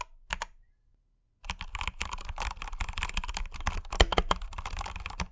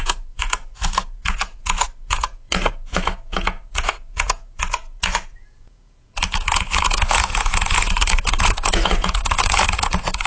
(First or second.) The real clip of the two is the first